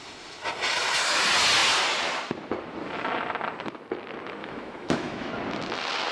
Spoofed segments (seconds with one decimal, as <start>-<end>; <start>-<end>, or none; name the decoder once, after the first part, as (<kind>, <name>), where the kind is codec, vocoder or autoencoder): 4.4-5.3 (autoencoder, DAC-VAE)